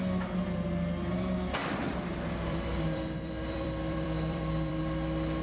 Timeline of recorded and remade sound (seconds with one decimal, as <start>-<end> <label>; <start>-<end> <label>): 0.0-1.6 recorded; 1.6-4.8 remade; 4.8-5.4 recorded